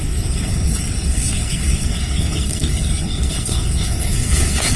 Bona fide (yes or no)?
no